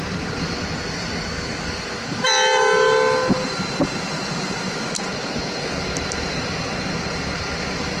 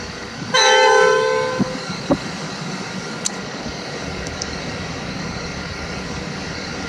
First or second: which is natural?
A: first